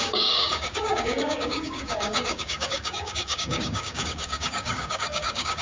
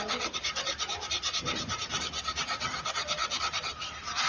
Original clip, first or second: second